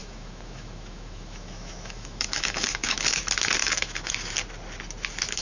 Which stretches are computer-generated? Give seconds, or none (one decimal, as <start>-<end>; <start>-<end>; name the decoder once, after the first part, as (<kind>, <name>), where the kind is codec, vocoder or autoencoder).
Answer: 0.0-3.2 (autoencoder, DAC-VAE); 3.6-4.1